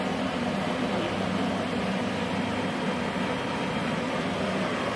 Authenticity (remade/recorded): recorded